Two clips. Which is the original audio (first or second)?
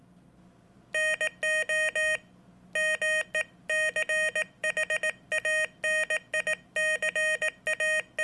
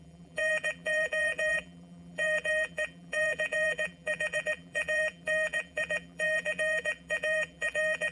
first